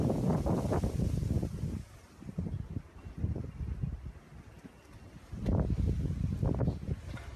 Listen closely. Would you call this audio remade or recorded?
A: recorded